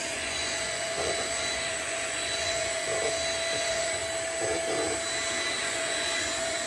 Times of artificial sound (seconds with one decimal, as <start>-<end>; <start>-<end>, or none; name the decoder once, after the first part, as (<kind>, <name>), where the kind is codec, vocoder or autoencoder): 0.0-2.9 (vocoder, Vocos); 3.6-4.0; 5.5-6.7